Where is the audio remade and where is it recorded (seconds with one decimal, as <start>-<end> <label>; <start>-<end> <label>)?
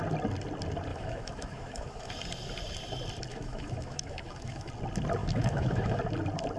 0.0-0.9 recorded; 0.9-2.1 remade; 2.1-3.3 recorded; 3.3-4.7 remade; 4.7-5.2 recorded; 5.2-6.0 remade; 6.0-6.6 recorded